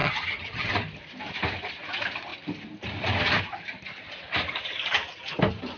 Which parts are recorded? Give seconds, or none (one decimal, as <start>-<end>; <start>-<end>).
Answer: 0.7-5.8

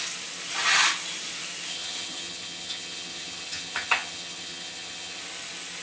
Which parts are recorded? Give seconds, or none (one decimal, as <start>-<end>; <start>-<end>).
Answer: 0.0-1.7; 5.2-5.8

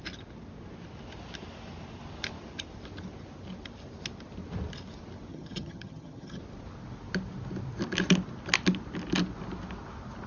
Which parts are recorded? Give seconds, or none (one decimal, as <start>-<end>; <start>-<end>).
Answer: 0.0-5.3; 6.4-10.3

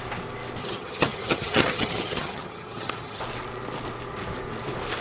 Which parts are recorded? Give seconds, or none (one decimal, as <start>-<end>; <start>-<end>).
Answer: 0.0-0.6; 3.2-5.0

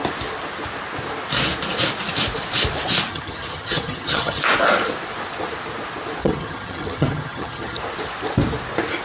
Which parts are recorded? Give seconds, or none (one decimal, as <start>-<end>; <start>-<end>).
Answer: 0.0-3.1; 4.4-6.2; 7.8-9.0